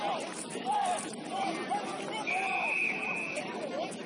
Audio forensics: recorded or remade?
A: remade